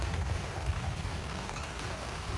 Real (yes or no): no